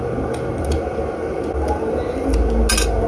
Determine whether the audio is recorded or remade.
recorded